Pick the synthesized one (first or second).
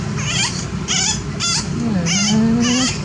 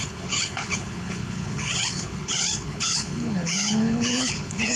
second